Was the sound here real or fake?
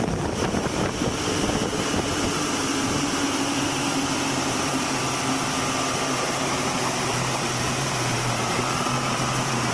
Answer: fake